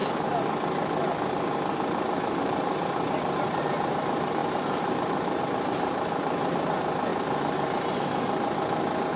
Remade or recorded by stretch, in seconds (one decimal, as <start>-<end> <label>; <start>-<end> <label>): 0.0-3.6 remade; 3.6-4.4 recorded; 4.4-5.4 remade; 5.4-7.1 recorded; 7.1-7.9 remade; 7.9-9.2 recorded